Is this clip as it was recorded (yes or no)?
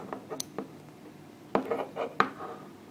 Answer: yes